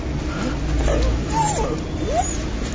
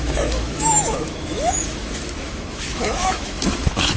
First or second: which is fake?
second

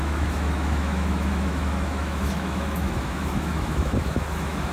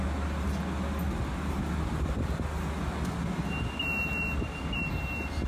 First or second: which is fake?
first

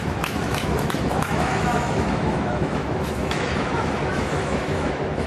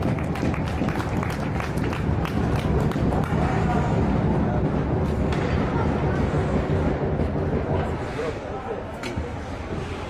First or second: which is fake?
first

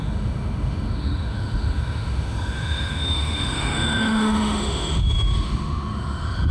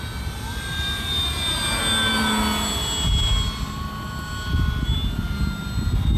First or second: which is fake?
first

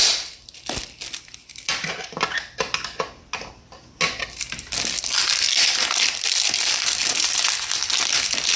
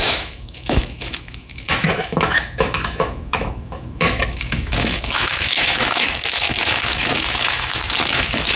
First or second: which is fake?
second